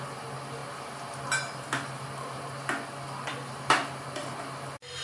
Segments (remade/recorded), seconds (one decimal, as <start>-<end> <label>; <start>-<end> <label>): 0.0-5.0 recorded